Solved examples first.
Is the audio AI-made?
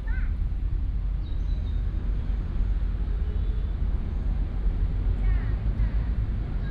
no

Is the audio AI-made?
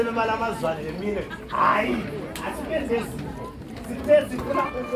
no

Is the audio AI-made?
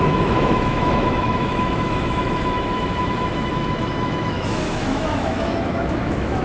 yes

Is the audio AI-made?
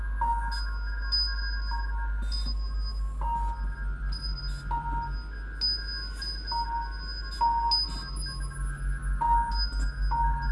no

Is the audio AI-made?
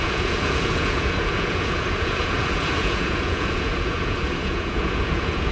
yes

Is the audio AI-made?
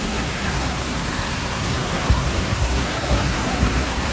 yes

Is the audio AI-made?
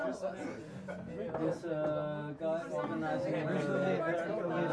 no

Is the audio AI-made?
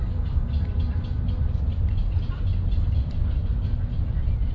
no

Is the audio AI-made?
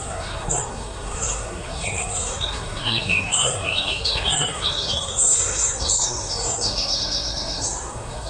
yes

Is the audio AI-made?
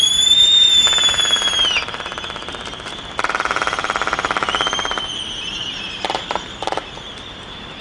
yes